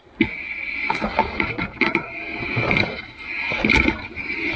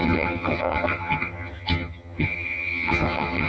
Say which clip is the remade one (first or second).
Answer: second